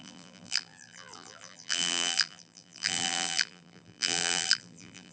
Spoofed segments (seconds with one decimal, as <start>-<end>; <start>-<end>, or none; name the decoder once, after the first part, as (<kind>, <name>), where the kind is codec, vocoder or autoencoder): 0.0-5.1 (vocoder, BigVGAN v2)